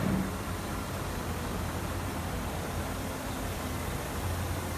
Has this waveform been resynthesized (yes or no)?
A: no